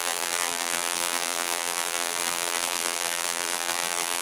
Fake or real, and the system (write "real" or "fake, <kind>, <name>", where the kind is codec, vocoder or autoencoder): fake, vocoder, BigVGAN v2